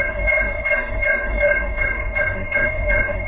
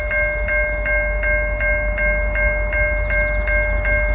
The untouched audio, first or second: second